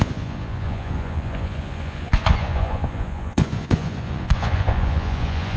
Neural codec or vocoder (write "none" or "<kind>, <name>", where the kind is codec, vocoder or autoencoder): vocoder, Vocos